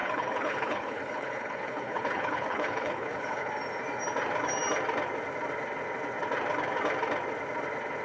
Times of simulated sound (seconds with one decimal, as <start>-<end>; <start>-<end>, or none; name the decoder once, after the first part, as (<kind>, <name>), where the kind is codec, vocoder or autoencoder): 0.0-3.5 (codec, HILCodec)